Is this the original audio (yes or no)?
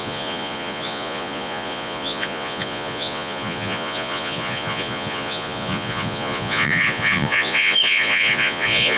no